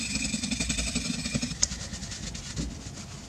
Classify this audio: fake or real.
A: real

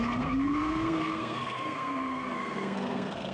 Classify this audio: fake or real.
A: fake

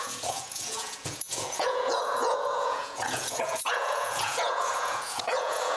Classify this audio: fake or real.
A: fake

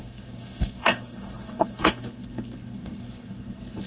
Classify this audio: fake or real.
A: fake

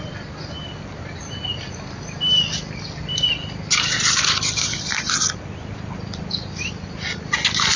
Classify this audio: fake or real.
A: real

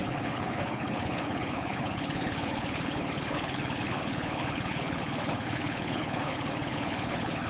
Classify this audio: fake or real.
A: fake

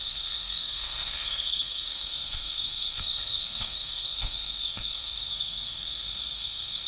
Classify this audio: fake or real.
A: fake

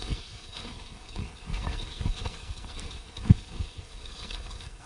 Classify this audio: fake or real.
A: fake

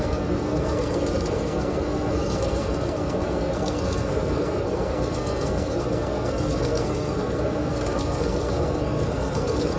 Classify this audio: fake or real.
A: fake